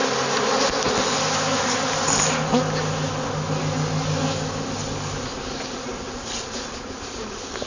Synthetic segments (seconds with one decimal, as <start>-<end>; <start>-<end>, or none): none